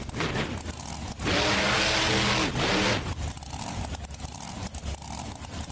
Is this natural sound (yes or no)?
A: yes